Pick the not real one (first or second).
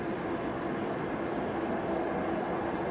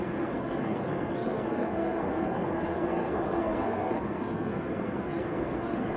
second